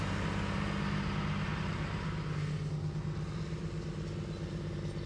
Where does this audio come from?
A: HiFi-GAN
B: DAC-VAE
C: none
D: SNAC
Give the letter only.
C